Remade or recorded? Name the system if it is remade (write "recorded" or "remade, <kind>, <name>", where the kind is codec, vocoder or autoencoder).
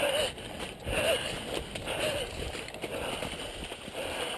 recorded